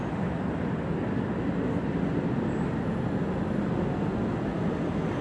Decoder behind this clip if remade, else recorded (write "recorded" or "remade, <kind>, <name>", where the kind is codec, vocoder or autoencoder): recorded